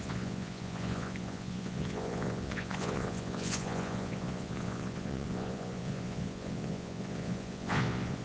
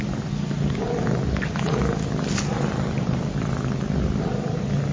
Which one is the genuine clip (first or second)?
second